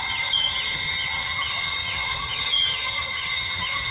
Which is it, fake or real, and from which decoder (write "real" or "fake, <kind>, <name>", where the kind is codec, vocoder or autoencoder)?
fake, vocoder, HiFi-GAN